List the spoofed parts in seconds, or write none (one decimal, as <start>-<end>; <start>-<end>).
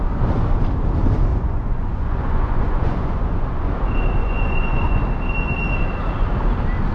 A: 1.3-3.7; 4.2-5.0